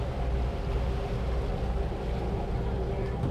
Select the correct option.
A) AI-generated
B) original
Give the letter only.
B